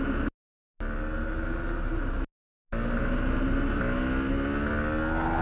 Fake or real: real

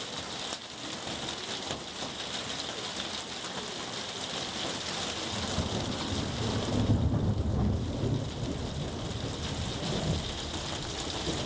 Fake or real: real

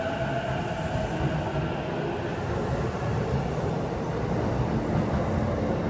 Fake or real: real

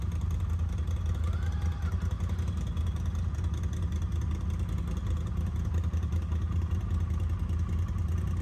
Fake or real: real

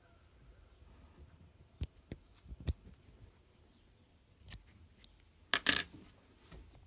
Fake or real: real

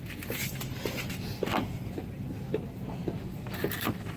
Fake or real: real